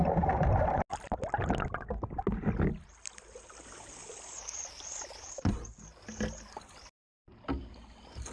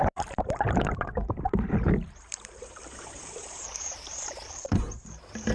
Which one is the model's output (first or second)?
second